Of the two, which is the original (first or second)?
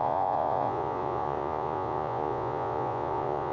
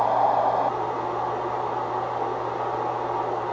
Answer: second